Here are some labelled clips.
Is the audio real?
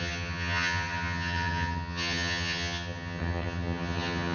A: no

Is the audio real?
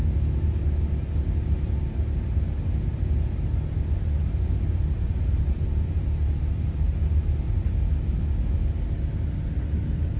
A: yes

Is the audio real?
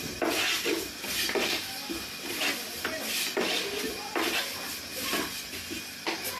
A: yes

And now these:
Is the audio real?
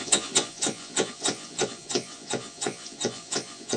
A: no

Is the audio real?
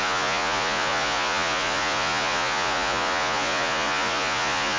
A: no